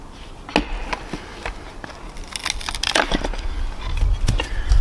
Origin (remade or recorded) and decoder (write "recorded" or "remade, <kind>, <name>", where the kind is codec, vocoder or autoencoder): recorded